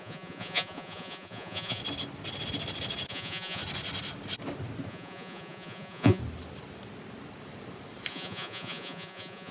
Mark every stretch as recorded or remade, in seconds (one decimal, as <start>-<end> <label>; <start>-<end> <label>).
0.0-1.8 remade; 1.8-3.1 recorded; 3.1-3.6 remade; 3.6-4.9 recorded; 4.9-6.2 remade; 6.2-8.1 recorded; 8.1-9.5 remade